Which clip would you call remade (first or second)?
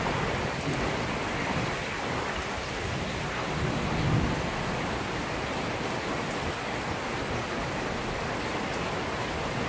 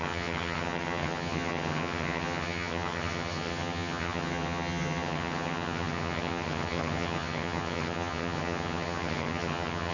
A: second